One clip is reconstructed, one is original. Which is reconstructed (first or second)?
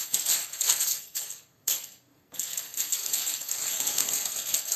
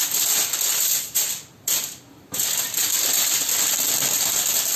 first